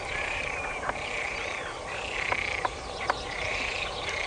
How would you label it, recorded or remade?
remade